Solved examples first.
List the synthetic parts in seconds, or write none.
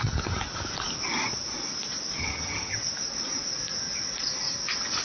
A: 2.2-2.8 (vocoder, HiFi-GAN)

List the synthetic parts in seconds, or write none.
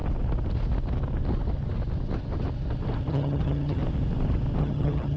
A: 3.1-3.8 (vocoder, HiFi-GAN); 4.6-5.2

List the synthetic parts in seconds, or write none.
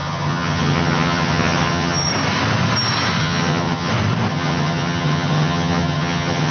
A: 0.0-2.1 (vocoder, HiFi-GAN); 3.2-3.9; 4.3-6.5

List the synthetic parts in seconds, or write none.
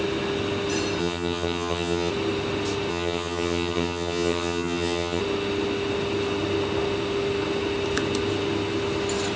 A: 1.0-2.1 (vocoder, HiFi-GAN); 2.9-5.2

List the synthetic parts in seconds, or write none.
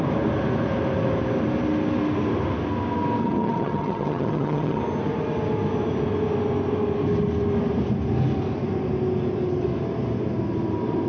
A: 3.2-4.8 (vocoder, HiFi-GAN)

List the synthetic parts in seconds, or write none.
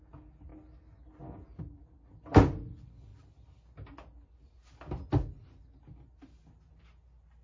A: none